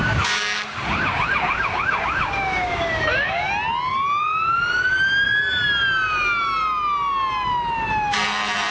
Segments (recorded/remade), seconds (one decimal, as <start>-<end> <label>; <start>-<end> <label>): 0.0-3.5 remade; 3.5-8.7 recorded